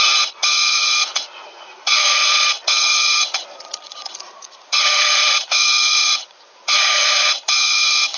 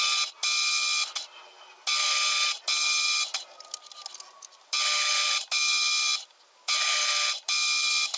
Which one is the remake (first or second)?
first